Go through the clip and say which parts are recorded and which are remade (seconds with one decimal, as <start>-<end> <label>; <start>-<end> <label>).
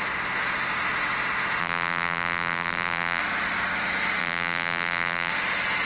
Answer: 0.0-1.6 recorded; 1.6-3.2 remade; 3.2-4.2 recorded; 4.2-5.3 remade; 5.3-5.9 recorded